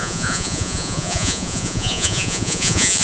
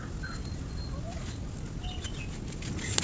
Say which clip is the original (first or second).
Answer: second